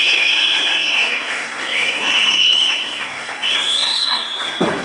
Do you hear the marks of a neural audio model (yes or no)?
yes